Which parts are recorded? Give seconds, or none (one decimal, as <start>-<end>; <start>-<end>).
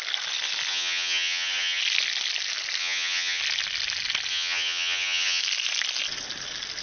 0.0-0.7; 1.8-2.8; 3.4-4.3; 5.4-6.8